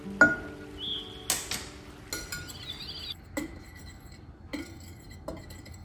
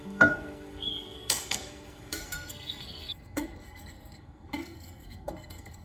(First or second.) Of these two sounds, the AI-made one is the second